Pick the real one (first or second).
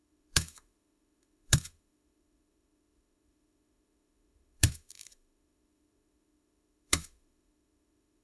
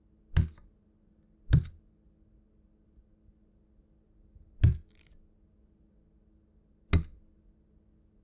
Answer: second